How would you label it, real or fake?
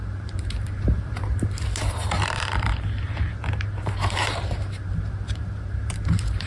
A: fake